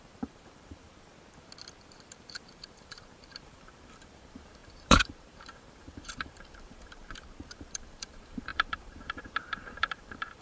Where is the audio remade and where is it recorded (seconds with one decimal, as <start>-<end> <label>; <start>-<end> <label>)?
0.0-1.1 remade; 1.1-1.8 recorded; 1.8-10.4 remade